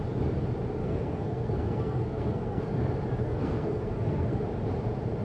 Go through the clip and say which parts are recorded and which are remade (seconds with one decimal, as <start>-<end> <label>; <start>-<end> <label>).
0.0-0.8 recorded; 0.8-2.6 remade; 2.6-3.2 recorded; 3.2-4.4 remade; 4.4-5.2 recorded